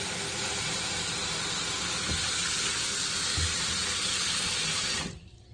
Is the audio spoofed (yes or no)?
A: no